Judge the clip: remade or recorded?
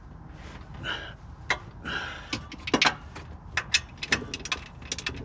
recorded